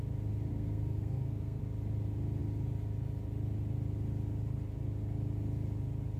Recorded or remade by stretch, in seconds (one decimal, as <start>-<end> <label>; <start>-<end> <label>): 0.0-0.5 recorded; 0.5-1.6 remade; 1.6-6.2 recorded